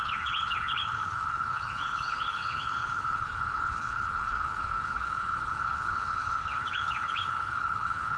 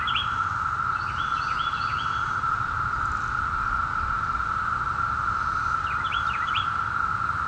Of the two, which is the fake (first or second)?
first